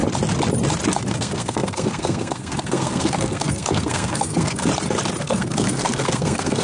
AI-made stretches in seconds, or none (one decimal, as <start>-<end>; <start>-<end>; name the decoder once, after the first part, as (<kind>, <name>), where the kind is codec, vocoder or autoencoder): 1.1-4.7 (codec, SNAC); 5.2-6.6